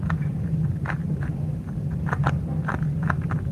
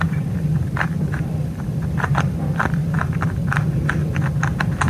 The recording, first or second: first